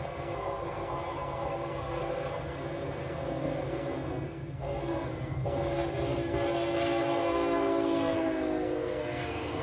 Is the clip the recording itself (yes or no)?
no